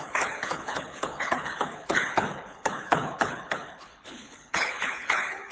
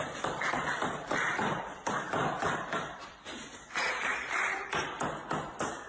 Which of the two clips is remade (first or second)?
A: first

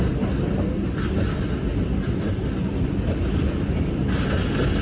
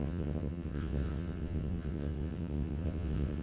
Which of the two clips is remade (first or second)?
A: second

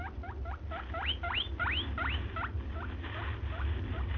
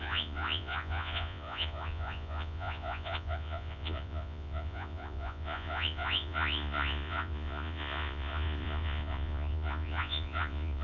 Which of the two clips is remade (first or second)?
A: second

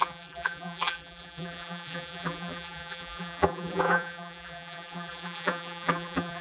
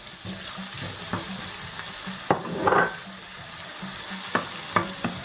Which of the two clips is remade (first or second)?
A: first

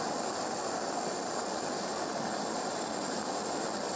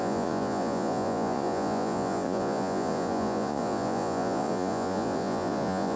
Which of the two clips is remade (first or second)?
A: second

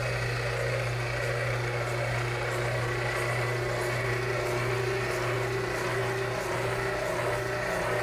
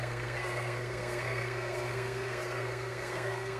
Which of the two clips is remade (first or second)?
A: second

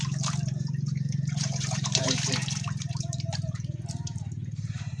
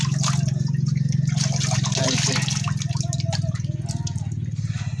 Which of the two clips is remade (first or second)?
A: first